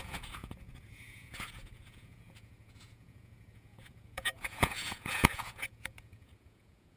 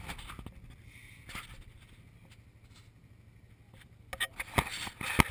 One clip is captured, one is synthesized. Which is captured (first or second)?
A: second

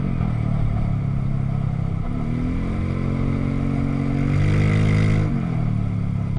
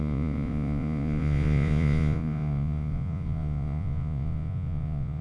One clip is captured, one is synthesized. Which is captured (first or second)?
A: first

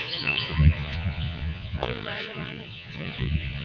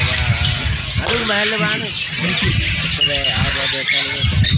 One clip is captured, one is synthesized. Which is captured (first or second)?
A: second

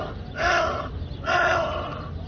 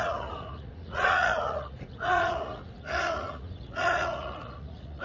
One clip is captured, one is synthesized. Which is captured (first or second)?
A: first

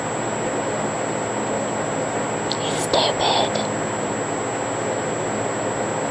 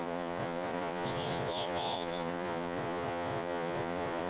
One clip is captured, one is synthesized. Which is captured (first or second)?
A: first